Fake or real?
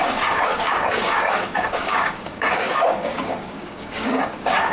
fake